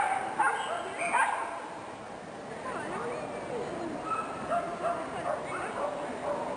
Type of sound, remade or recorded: recorded